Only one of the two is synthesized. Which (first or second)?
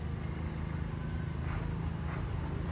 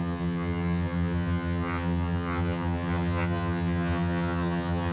second